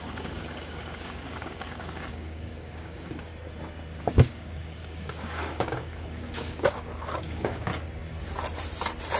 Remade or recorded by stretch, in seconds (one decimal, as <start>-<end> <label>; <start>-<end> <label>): 0.0-3.3 remade; 3.3-4.0 recorded; 4.0-7.7 remade; 7.7-9.2 recorded